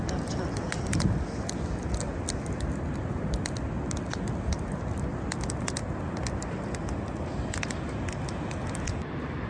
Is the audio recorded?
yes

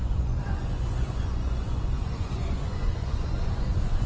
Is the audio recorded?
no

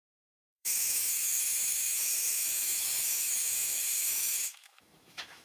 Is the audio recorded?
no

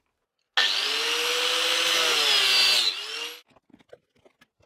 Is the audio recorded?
yes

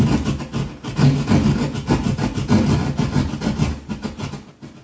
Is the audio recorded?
yes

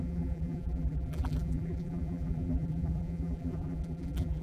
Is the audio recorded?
no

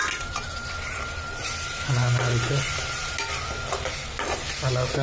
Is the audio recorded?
yes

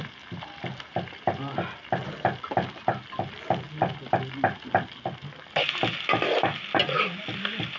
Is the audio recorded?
yes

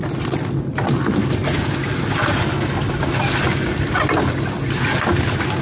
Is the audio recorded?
yes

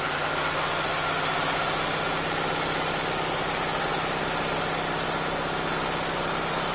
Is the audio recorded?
yes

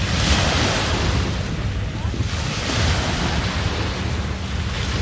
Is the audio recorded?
yes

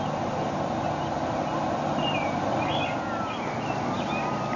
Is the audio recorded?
yes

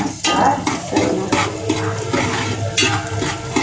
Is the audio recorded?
yes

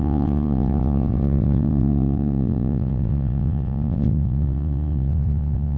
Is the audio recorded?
no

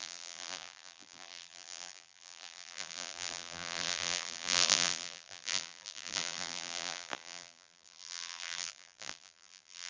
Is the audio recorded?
no